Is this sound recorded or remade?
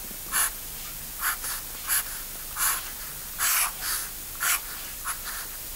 recorded